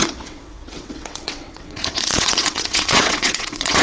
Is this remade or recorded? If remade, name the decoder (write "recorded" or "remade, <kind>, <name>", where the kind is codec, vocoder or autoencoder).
remade, vocoder, WaveNeXt